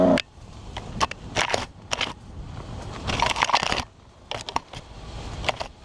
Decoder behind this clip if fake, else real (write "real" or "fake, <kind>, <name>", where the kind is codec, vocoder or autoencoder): real